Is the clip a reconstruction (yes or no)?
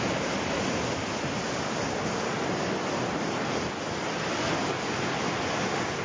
no